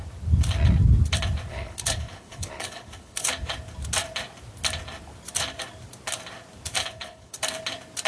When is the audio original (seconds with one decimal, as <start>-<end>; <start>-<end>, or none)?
0.0-1.5; 3.3-6.8; 7.4-8.1